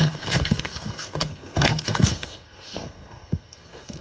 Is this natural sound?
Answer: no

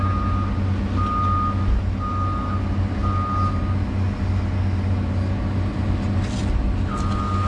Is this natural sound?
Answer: yes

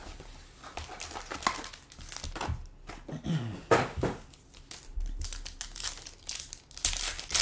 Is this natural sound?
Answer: yes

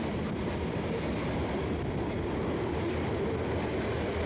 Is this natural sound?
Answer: yes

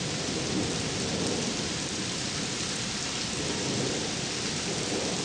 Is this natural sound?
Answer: yes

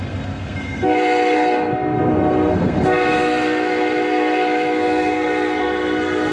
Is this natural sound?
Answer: no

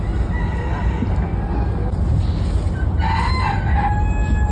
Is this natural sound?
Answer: yes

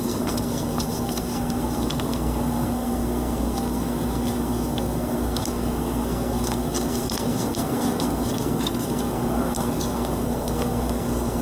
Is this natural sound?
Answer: no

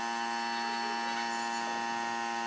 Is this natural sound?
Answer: yes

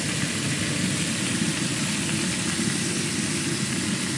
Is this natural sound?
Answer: yes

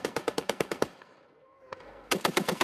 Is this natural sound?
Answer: no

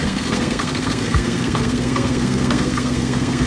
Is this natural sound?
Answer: no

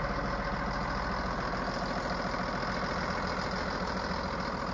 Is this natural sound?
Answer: yes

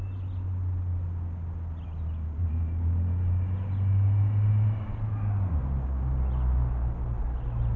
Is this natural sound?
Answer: yes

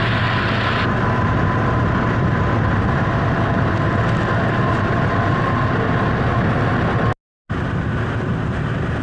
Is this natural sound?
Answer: yes